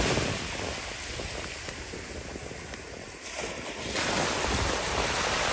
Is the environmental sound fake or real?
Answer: real